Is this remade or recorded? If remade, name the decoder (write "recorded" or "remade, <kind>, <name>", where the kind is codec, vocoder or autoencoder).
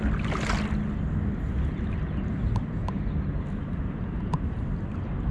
recorded